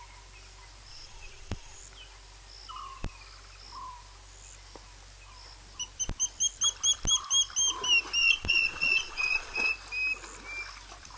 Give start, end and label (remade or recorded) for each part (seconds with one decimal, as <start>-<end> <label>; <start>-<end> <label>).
0.0-0.9 recorded; 0.9-1.8 remade; 1.8-8.2 recorded; 8.2-9.7 remade; 9.7-11.2 recorded